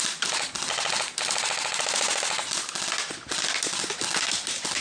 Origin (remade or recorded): recorded